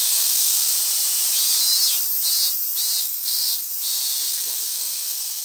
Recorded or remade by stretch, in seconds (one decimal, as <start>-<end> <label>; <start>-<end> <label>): 0.0-0.7 remade; 0.7-3.0 recorded; 3.0-3.7 remade; 3.7-4.3 recorded; 4.3-5.4 remade